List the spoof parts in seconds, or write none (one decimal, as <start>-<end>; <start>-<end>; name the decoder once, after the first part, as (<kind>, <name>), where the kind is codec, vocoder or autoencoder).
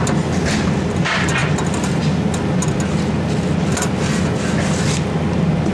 none